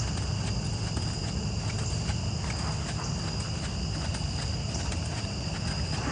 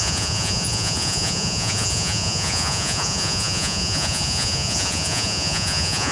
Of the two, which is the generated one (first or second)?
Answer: second